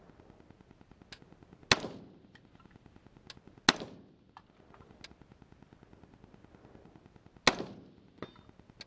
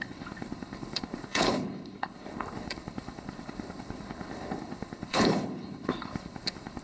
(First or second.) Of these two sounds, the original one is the first